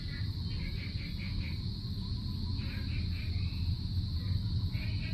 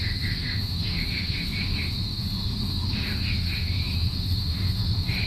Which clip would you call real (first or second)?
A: first